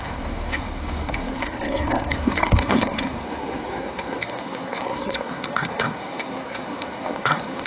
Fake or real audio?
fake